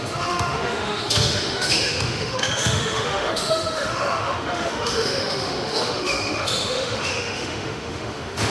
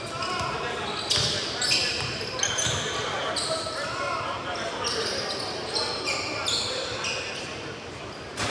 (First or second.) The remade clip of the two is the first